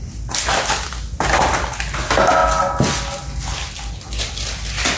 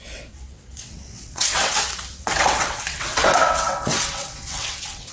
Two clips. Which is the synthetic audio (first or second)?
second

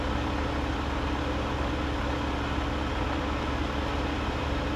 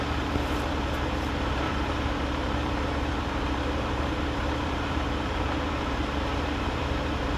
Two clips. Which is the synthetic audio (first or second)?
second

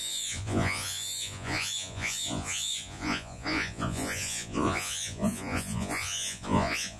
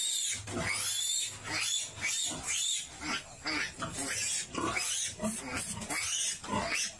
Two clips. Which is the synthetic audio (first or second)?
first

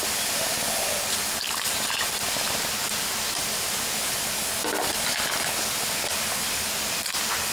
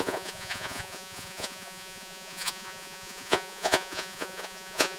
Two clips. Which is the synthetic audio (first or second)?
second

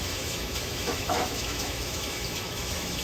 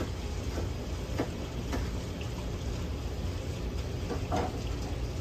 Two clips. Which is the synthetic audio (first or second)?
first